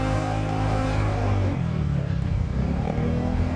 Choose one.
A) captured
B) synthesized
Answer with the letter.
B